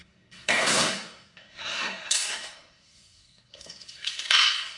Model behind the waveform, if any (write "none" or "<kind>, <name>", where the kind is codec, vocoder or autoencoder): codec, SNAC